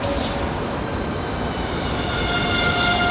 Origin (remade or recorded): recorded